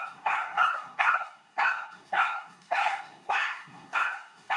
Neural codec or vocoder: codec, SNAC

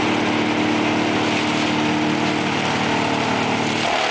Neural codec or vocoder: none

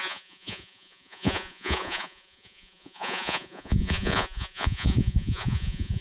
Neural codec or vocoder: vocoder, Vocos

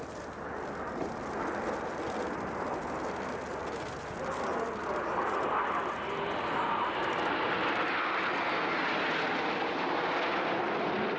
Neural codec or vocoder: none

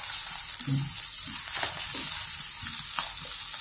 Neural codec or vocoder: none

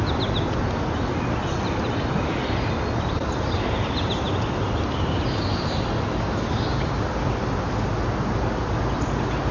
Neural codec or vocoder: none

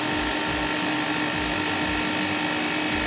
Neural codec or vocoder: none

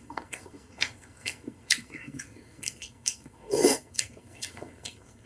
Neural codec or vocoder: codec, SNAC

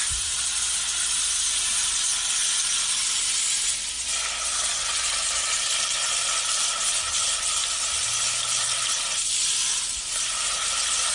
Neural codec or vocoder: none